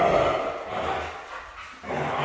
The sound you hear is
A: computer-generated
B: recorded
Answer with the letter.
B